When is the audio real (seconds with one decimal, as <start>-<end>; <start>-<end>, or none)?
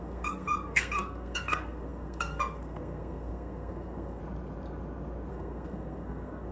4.2-5.3